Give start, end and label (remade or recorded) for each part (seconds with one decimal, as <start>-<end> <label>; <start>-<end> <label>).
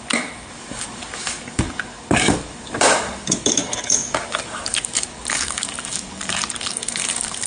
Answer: 0.0-7.5 remade